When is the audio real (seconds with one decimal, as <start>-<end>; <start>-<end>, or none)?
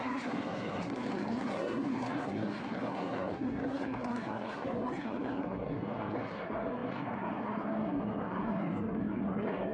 none